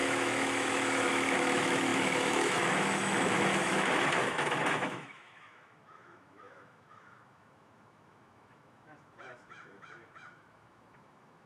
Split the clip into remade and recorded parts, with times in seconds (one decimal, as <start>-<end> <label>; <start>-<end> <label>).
0.0-11.5 remade